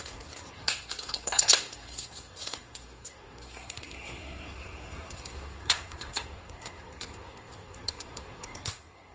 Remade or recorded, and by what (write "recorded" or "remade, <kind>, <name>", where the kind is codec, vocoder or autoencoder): remade, codec, SNAC